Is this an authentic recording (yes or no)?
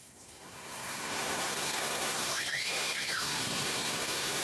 no